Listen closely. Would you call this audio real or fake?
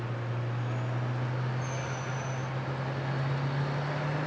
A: real